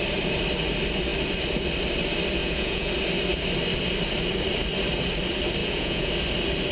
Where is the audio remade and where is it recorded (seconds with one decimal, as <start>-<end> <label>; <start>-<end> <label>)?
0.0-2.4 recorded; 2.4-2.9 remade; 2.9-5.6 recorded; 5.6-6.1 remade; 6.1-6.7 recorded